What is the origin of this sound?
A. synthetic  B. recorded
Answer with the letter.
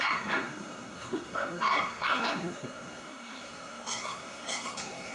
A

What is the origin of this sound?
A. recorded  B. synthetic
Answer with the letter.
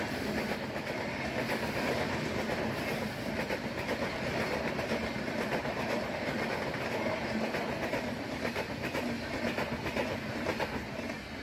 A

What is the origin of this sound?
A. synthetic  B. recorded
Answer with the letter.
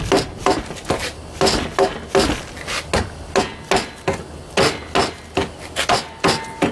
B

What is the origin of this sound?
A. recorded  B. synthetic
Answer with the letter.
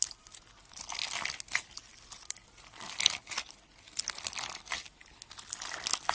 A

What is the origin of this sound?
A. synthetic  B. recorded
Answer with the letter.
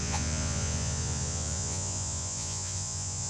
A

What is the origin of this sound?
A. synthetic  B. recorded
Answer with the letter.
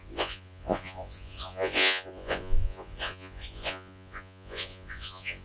A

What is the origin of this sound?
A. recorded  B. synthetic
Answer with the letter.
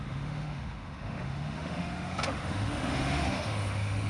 B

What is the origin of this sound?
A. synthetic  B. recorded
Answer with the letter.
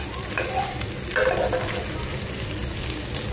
B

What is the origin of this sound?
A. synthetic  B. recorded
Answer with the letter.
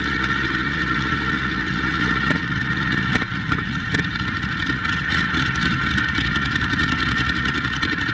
A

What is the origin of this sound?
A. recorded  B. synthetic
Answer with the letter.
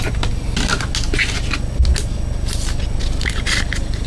A